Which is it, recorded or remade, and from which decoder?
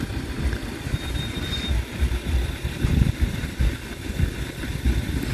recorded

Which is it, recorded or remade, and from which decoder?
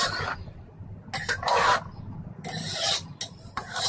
recorded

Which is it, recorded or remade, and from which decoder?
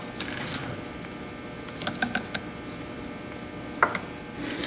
recorded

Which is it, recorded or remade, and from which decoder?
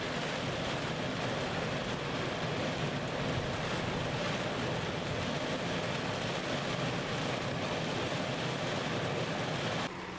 recorded